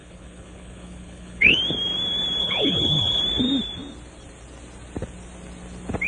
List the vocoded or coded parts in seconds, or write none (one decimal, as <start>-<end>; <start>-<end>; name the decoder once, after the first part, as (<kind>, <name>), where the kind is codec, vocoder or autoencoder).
0.0-1.6 (codec, HILCodec); 2.4-3.2